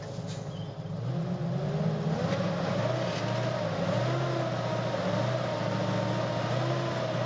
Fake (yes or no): no